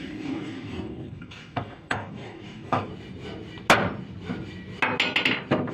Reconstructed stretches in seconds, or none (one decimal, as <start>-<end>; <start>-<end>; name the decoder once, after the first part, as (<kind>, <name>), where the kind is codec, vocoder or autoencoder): 0.0-2.9 (codec, DAC)

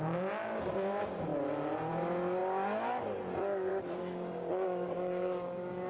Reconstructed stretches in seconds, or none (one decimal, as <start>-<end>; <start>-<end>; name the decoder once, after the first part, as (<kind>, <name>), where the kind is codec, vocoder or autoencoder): 3.7-5.9 (codec, DAC)

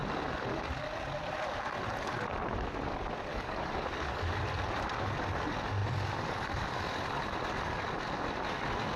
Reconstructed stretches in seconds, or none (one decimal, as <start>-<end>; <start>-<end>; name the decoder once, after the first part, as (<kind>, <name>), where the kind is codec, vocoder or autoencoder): 3.3-4.4 (codec, DAC)

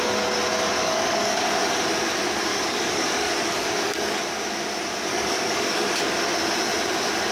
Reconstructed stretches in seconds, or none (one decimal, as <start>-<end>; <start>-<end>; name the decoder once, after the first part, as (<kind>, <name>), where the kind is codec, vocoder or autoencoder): 0.8-1.4 (codec, DAC); 2.5-4.3; 5.1-6.1

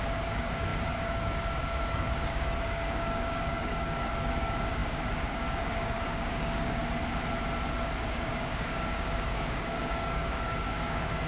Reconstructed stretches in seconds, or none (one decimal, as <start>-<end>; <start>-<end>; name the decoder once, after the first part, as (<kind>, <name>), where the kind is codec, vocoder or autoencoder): 0.0-6.8 (codec, DAC); 8.1-11.3

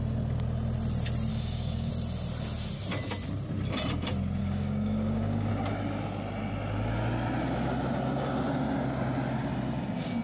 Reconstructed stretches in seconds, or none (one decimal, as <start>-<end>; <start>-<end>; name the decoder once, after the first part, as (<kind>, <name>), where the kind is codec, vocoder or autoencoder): 1.3-1.9 (codec, DAC); 4.4-5.5

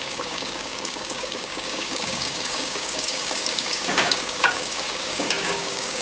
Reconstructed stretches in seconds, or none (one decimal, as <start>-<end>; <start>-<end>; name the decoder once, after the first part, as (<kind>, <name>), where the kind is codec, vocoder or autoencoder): 0.0-6.0 (codec, DAC)